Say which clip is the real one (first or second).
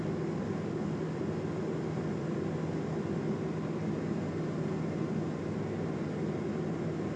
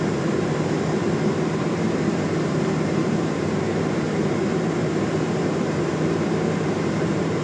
first